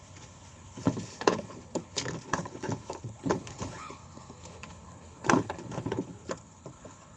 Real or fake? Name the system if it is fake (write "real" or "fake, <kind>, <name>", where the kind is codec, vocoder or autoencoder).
fake, codec, HILCodec